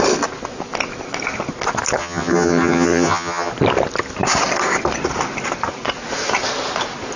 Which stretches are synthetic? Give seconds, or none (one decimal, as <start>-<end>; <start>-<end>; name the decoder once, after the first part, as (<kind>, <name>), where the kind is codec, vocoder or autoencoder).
2.0-3.5 (vocoder, HiFi-GAN)